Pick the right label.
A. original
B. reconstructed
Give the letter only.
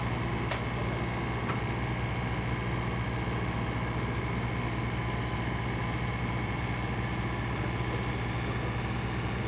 A